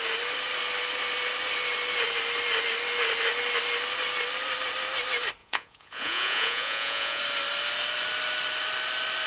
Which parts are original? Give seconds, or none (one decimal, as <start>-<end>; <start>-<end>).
0.0-5.4; 7.2-9.3